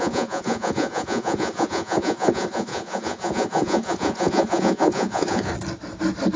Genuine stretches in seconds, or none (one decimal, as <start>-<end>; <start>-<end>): 5.5-6.4